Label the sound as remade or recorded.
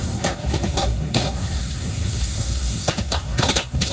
remade